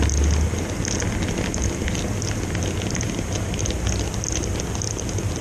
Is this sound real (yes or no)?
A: yes